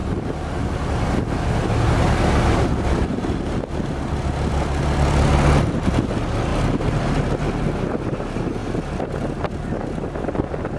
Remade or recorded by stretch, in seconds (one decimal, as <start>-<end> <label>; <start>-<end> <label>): 0.0-6.5 recorded; 6.5-7.1 remade; 7.1-10.8 recorded